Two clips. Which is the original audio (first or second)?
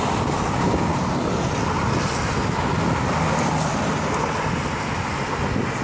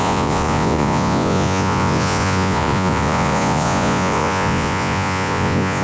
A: first